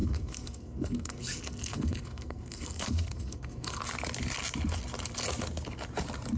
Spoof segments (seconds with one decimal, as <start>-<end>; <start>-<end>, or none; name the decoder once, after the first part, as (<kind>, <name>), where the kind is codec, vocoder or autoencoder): 0.0-3.8 (codec, SNAC)